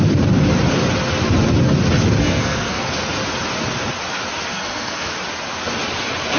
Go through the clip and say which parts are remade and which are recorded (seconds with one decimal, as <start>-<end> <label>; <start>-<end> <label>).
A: 0.0-2.2 recorded; 2.2-2.8 remade; 2.8-4.5 recorded; 4.5-5.1 remade; 5.1-6.4 recorded